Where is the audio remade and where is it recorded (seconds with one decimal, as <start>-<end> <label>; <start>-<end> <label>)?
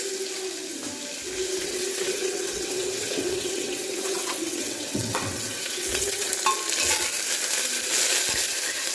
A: 0.0-1.6 recorded; 1.6-6.3 remade; 6.3-8.9 recorded